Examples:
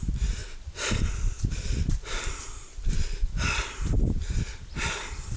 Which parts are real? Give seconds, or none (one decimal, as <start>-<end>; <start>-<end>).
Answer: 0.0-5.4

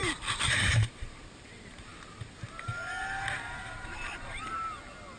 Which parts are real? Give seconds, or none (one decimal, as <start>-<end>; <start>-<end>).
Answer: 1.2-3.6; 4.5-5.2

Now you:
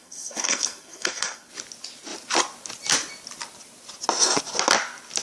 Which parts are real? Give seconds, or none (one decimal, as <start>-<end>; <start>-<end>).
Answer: 1.5-5.2

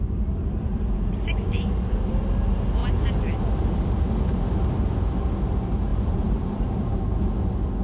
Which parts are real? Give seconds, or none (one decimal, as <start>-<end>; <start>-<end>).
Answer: 0.0-0.7; 2.1-5.9; 7.0-7.8